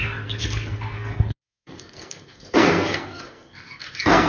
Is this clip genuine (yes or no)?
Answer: no